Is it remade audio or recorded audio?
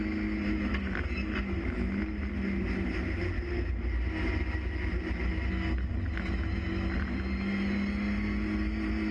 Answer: recorded